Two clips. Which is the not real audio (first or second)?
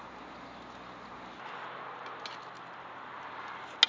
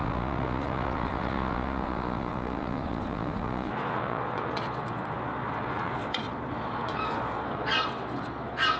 second